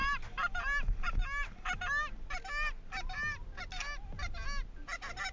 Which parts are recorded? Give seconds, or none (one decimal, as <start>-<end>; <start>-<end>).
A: 0.0-5.3